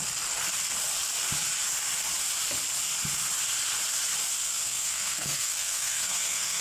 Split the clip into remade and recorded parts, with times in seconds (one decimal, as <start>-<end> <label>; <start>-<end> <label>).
0.0-4.4 recorded; 4.4-6.6 remade